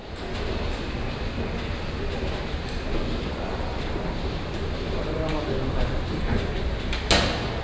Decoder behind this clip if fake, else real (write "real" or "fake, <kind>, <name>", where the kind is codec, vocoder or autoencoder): real